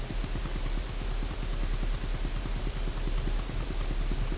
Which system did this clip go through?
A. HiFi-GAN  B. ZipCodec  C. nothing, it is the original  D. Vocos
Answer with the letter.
C